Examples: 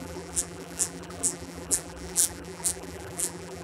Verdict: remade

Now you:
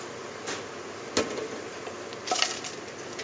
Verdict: recorded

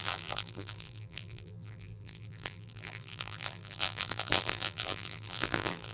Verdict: remade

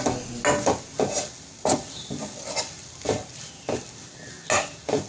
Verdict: recorded